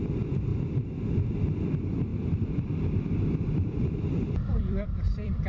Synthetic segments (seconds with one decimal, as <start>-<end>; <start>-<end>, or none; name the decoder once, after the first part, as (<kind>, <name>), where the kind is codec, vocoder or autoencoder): 0.5-1.3 (vocoder, BigVGAN v2); 2.1-5.5